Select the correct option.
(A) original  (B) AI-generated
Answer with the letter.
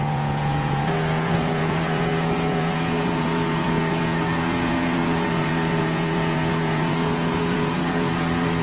B